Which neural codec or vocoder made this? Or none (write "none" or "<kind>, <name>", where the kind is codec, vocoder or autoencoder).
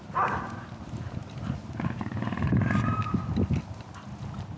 none